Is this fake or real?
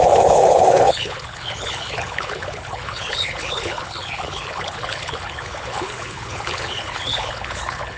fake